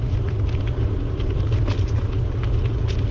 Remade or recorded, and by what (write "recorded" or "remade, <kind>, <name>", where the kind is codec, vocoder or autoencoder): recorded